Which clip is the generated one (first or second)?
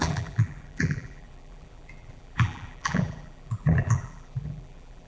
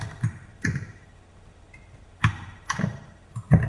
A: first